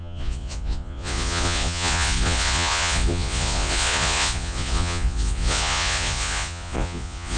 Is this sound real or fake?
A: fake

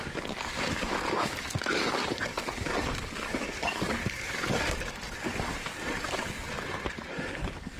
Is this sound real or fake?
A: fake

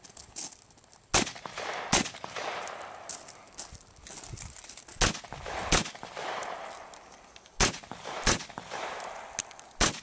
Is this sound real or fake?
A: real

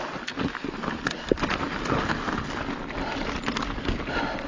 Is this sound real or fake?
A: real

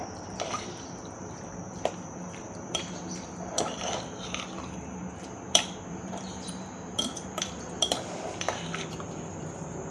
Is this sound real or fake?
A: fake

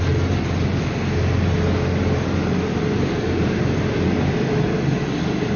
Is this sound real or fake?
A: real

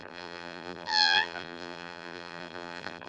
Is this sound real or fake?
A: fake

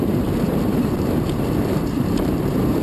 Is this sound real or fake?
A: fake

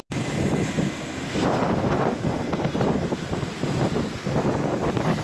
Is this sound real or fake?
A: real